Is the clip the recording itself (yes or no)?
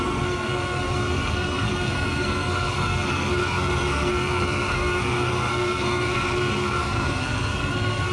no